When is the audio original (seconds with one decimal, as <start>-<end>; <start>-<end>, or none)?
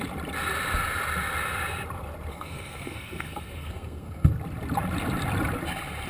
0.0-2.3; 4.3-6.1